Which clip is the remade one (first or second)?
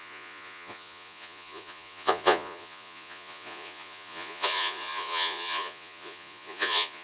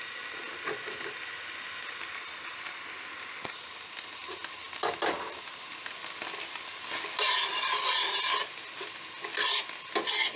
first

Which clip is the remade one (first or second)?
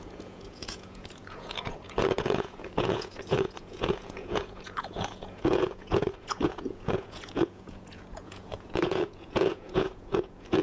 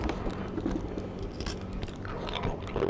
first